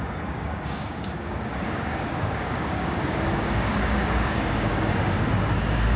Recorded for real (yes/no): no